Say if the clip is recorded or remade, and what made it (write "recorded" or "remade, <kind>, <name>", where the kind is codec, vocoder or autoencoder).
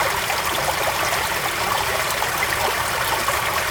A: recorded